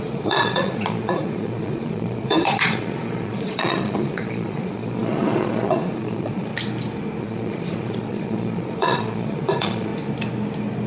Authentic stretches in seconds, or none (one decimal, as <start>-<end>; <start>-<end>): 6.5-7.2; 9.9-10.9